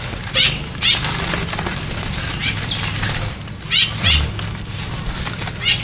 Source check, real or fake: real